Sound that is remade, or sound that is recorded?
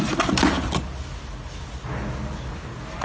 recorded